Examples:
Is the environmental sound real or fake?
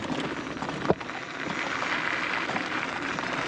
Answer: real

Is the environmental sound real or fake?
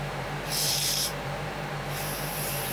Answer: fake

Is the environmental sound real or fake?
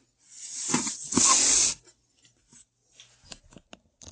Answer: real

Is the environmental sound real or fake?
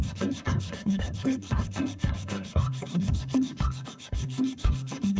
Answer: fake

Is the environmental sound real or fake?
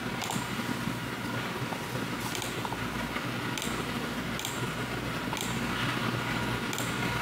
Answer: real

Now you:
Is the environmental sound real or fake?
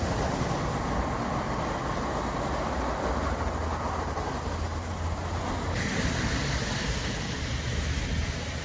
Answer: real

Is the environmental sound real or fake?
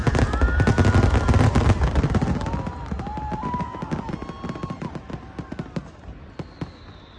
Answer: real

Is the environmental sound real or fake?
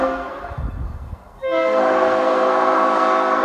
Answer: fake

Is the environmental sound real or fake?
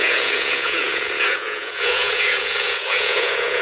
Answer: fake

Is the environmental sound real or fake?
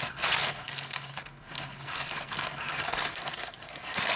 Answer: fake